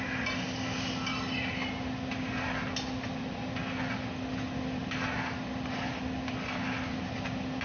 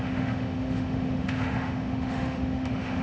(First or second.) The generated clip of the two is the second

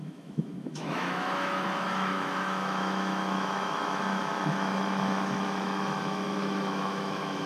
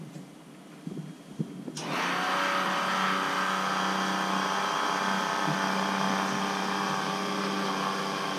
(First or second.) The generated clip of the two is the first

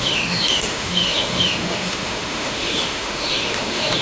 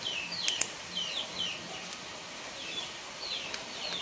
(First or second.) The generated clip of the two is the first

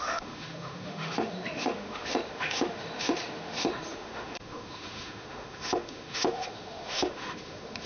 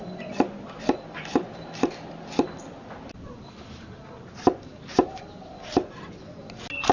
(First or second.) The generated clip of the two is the first